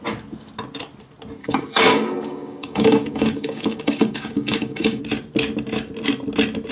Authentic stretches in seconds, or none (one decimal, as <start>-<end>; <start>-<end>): 0.0-1.4; 5.0-6.7